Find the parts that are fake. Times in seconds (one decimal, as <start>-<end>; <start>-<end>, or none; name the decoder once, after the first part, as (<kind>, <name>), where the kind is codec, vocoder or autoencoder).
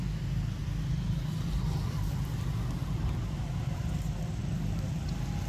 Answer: 0.6-3.9 (vocoder, BigVGAN v2)